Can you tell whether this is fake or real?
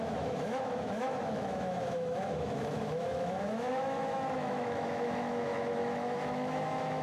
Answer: fake